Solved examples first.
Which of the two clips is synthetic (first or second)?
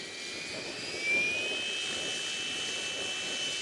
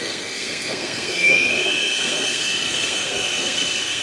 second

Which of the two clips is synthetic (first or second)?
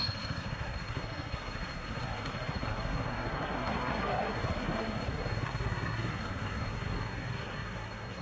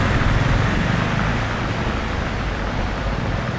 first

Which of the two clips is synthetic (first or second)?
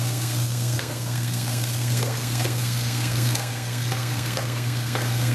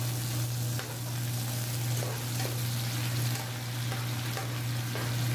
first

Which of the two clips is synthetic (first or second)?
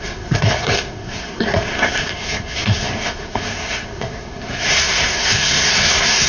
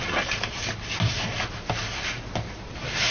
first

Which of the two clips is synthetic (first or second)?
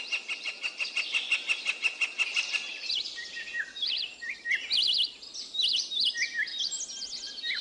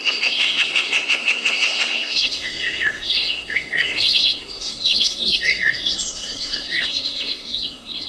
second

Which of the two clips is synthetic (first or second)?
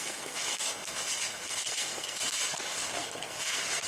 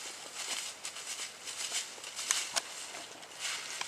first